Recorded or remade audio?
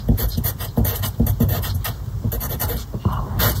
recorded